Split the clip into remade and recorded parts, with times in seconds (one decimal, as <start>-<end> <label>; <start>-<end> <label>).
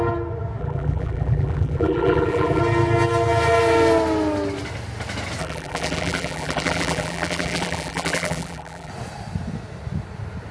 0.0-0.6 recorded; 0.6-2.6 remade; 2.6-5.4 recorded; 5.4-8.9 remade; 8.9-10.5 recorded